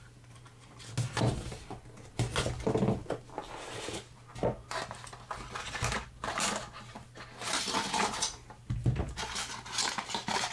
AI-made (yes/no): no